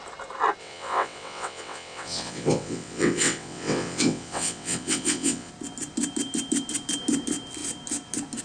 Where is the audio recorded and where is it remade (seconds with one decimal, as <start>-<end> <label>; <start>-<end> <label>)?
0.0-0.6 recorded; 0.6-5.5 remade; 5.5-8.4 recorded